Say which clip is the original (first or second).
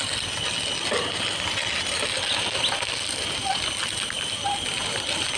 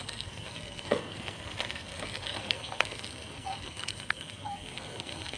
first